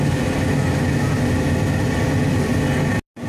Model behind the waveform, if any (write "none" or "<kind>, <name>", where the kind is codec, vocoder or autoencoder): none